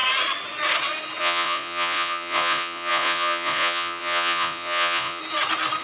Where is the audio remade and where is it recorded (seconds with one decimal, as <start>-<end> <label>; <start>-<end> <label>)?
0.0-1.2 recorded; 1.2-5.2 remade; 5.2-5.8 recorded